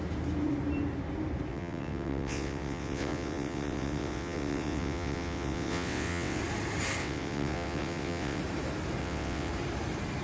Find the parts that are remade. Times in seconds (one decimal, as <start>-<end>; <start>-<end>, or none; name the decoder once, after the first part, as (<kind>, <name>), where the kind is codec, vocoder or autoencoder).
1.5-6.4 (vocoder, WaveNeXt); 7.0-8.4; 9.0-9.5